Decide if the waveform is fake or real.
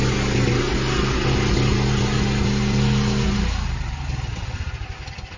real